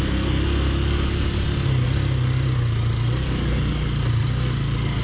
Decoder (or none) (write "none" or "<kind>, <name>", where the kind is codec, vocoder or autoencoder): none